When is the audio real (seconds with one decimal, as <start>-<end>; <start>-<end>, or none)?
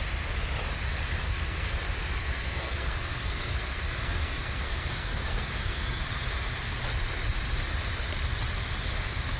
0.0-1.2; 1.8-2.2; 6.0-9.4